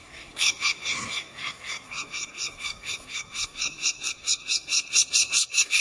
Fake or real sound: fake